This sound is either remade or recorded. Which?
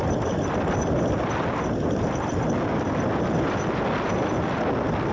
recorded